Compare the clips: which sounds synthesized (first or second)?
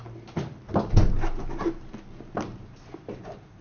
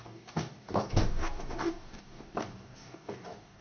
second